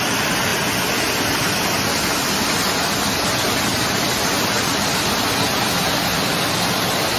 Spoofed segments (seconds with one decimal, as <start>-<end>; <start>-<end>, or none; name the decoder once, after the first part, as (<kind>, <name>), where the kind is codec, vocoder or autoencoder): 3.7-5.0 (vocoder, BigVGAN v2)